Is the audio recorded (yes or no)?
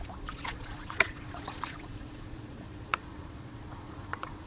no